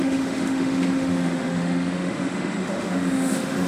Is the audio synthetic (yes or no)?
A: yes